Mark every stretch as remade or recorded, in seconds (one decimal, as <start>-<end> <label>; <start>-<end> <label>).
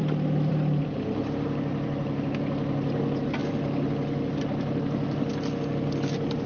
0.0-6.5 recorded